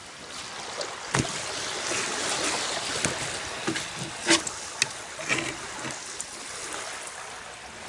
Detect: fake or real real